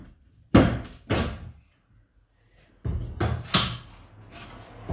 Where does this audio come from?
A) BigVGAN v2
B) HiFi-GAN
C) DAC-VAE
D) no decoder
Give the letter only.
D